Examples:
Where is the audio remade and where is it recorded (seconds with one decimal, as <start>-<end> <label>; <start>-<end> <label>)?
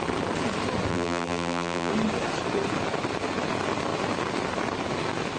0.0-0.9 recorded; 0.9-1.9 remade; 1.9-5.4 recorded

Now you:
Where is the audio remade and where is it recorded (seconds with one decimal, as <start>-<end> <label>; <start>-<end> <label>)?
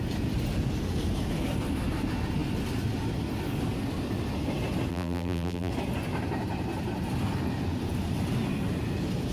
0.0-4.9 recorded; 4.9-5.7 remade; 5.7-9.3 recorded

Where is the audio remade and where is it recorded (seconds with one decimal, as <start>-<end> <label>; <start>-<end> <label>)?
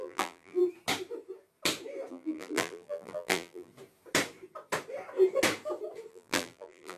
0.0-0.6 remade; 0.6-2.1 recorded; 2.1-3.7 remade; 3.7-6.1 recorded; 6.1-7.0 remade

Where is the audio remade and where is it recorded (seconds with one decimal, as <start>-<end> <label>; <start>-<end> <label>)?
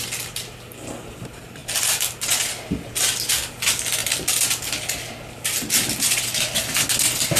0.0-7.4 recorded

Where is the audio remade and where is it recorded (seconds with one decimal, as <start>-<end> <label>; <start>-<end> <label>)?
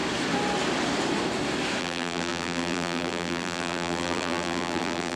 0.0-1.8 recorded; 1.8-5.2 remade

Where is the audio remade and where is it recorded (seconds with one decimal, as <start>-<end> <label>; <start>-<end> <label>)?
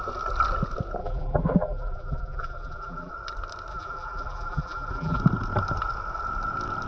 0.0-1.0 recorded; 1.0-3.1 remade; 3.1-3.7 recorded; 3.7-5.2 remade; 5.2-6.9 recorded